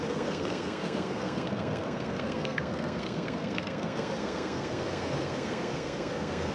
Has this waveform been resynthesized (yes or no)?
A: yes